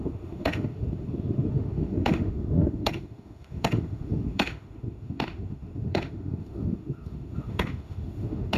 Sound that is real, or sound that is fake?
fake